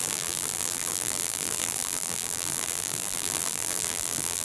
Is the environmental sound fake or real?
fake